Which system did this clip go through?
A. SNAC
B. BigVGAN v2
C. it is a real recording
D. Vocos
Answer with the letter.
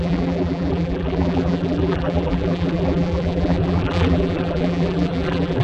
B